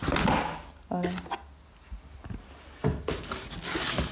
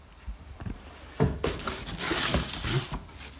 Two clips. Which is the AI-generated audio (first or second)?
second